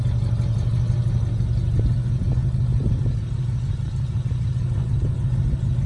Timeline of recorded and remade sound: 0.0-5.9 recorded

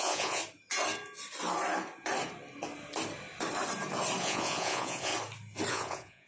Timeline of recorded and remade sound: 0.0-0.4 remade; 0.4-4.2 recorded; 4.2-5.1 remade; 5.1-5.7 recorded; 5.7-6.3 remade

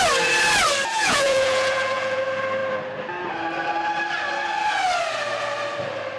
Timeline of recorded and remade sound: 0.0-0.9 recorded; 0.9-2.2 remade; 2.2-6.2 recorded

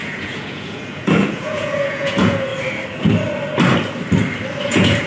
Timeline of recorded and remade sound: 0.0-2.5 remade; 2.5-4.6 recorded; 4.6-5.1 remade

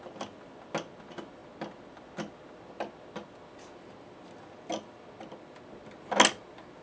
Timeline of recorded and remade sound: 0.0-6.8 recorded